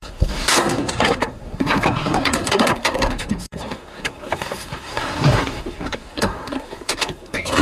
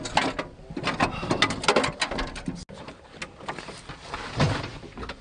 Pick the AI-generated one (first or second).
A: first